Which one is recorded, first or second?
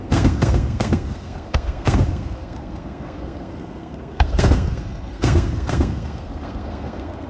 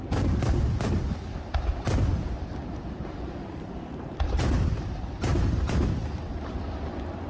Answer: second